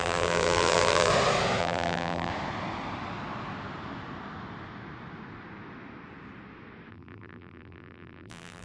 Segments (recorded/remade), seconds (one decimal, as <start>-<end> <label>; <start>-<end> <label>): 0.0-1.1 remade; 1.1-1.6 recorded; 1.6-2.3 remade; 2.3-6.9 recorded; 6.9-8.6 remade